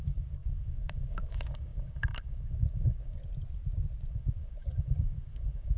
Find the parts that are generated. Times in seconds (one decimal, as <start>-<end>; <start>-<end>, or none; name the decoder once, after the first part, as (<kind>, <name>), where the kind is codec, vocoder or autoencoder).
0.0-3.2 (codec, DAC); 4.1-5.8